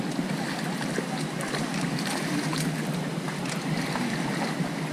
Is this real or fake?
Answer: real